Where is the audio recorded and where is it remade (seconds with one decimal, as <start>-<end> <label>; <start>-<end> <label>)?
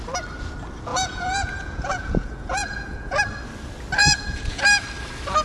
0.0-0.9 recorded; 0.9-3.2 remade; 3.2-4.0 recorded; 4.0-4.6 remade; 4.6-5.4 recorded